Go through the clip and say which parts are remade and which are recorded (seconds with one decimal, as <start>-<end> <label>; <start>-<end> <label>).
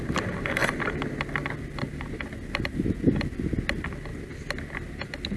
0.0-5.4 recorded